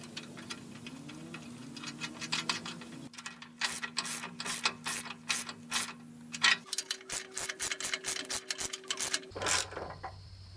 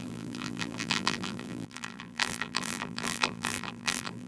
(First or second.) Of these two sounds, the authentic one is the first